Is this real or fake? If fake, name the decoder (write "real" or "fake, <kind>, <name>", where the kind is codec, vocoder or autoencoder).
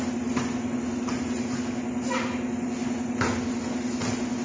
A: real